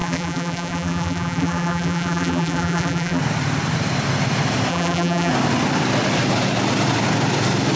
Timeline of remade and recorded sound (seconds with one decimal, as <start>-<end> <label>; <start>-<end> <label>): 0.0-3.2 remade; 3.2-4.7 recorded; 4.7-5.3 remade; 5.3-7.8 recorded